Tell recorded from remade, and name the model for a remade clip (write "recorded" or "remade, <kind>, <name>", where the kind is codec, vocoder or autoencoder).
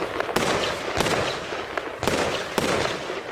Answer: recorded